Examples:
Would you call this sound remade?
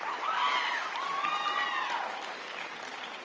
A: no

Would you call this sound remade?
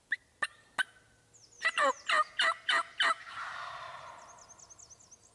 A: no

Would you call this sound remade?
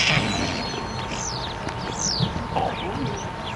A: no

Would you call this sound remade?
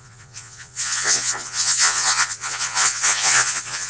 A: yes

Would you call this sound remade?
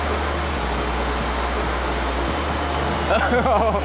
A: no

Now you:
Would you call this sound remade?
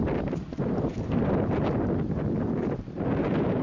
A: no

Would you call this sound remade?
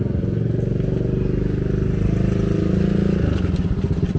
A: no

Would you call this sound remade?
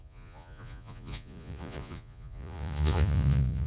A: yes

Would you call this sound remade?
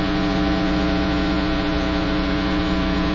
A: yes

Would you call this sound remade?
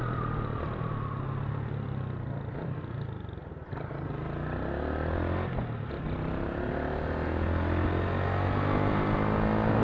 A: no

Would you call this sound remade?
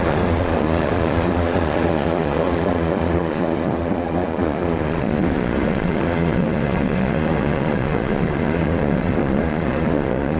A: yes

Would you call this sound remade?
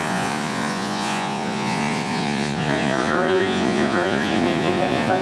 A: yes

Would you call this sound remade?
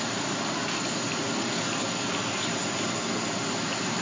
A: no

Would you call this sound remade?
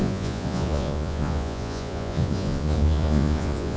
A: yes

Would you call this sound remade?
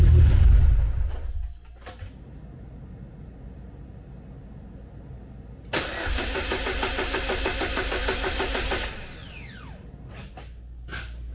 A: no